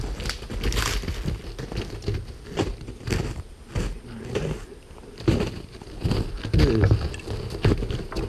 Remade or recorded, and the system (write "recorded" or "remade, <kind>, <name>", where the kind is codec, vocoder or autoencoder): recorded